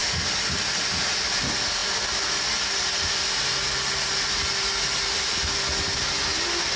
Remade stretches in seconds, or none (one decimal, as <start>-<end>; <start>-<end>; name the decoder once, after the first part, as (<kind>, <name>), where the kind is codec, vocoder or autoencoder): 0.0-0.6 (vocoder, BigVGAN v2)